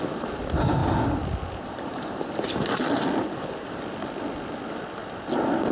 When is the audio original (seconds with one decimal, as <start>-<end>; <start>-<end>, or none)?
0.0-5.7

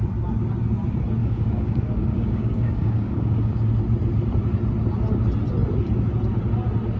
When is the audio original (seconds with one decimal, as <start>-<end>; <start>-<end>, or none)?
0.0-1.2; 3.7-7.0